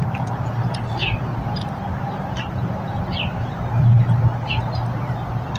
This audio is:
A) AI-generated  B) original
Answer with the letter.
B